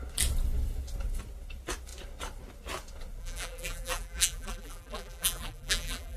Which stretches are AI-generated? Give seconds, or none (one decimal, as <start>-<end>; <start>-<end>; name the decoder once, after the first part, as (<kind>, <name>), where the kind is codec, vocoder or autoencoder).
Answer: 3.2-6.2 (vocoder, BigVGAN v2)